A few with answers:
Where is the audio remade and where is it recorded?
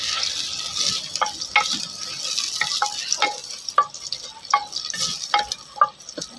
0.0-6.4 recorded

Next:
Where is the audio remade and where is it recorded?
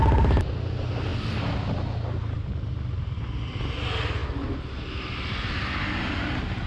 0.0-6.7 recorded